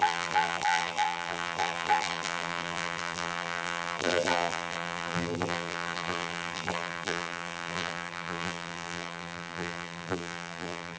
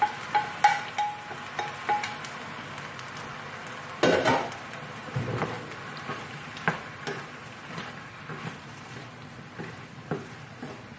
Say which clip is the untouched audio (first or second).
second